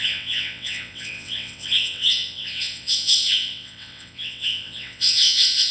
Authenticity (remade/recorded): remade